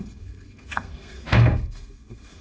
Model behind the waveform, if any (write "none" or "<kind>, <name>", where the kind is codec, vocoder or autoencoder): codec, SNAC